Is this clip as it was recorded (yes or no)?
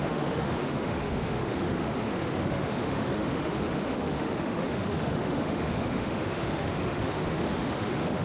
no